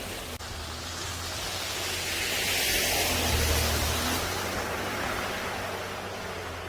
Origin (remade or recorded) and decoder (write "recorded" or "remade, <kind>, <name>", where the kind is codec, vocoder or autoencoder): recorded